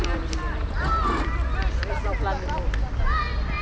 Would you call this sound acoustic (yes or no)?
yes